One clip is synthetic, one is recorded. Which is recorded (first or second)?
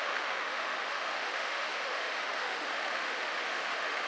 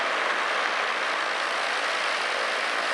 second